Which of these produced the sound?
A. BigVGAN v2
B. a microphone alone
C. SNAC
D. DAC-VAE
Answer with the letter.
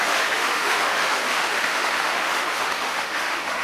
D